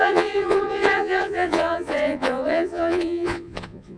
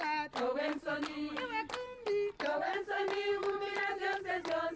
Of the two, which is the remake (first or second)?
first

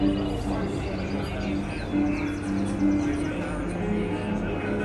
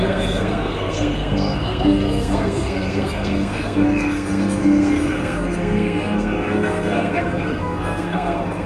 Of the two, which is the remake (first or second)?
second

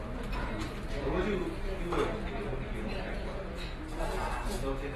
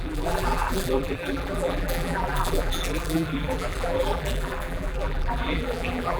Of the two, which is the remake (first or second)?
second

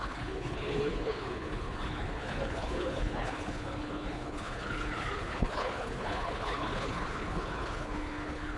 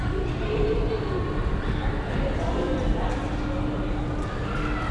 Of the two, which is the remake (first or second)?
first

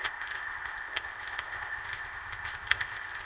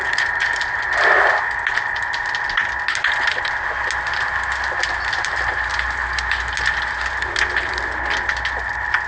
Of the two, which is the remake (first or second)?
first